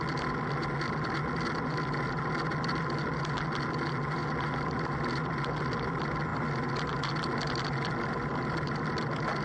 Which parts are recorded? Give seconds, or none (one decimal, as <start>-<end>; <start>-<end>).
0.0-9.4